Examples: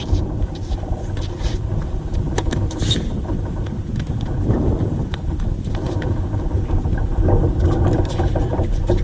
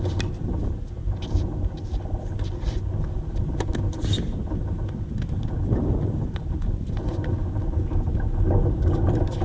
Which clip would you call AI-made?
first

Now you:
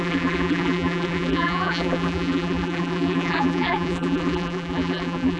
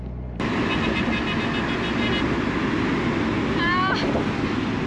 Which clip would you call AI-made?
first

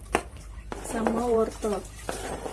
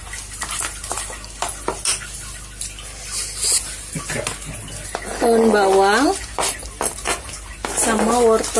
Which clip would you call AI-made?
first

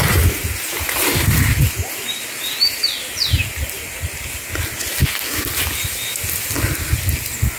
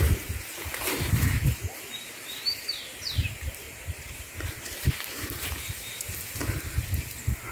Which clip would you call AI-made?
second